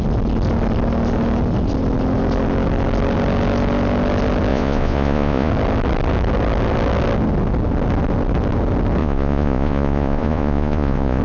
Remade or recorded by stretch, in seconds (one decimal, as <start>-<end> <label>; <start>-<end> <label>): 0.0-4.5 recorded; 4.5-5.5 remade; 5.5-9.0 recorded; 9.0-11.2 remade